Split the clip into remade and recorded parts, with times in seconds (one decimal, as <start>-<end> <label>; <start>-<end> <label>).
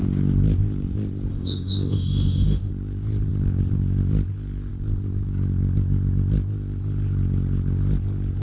0.0-1.3 recorded; 1.3-2.7 remade; 2.7-8.4 recorded